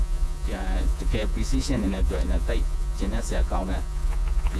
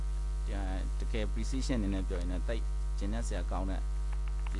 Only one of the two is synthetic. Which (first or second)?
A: first